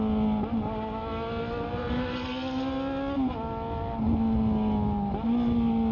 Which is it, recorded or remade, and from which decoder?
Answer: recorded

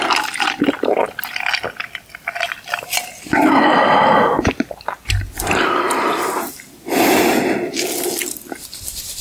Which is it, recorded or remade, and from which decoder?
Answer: recorded